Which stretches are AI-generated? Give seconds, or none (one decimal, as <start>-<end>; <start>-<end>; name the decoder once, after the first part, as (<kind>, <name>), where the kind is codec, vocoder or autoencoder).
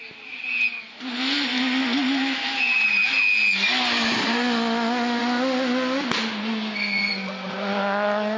none